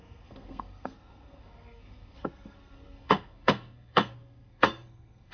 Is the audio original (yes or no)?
no